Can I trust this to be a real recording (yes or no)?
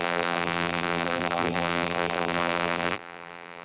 no